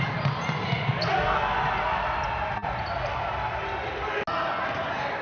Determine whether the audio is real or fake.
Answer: real